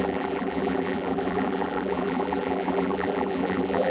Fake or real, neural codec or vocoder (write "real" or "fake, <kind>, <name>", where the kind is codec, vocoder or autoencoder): fake, vocoder, BigVGAN v2